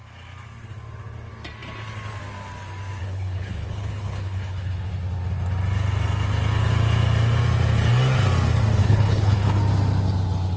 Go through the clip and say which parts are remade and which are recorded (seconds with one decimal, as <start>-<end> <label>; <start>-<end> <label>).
0.0-3.0 recorded; 3.0-4.9 remade; 4.9-8.8 recorded; 8.8-9.6 remade; 9.6-10.6 recorded